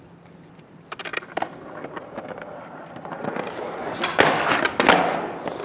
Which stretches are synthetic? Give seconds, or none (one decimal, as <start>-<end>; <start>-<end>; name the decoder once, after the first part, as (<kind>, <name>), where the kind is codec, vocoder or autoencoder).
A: none